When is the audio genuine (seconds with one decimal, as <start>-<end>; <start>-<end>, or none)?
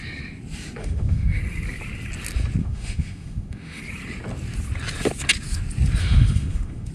0.0-0.8; 1.4-2.6; 3.8-6.0